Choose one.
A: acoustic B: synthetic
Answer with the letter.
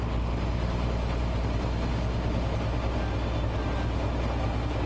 A